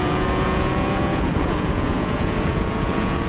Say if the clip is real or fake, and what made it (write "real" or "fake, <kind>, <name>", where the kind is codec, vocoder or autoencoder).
fake, vocoder, Vocos